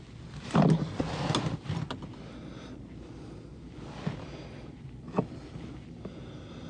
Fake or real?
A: real